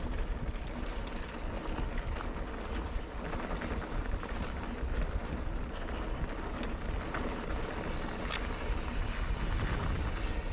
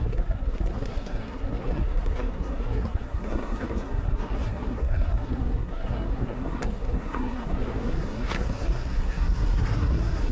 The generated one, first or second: second